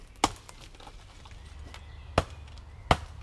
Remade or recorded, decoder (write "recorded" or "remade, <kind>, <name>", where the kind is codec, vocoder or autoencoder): recorded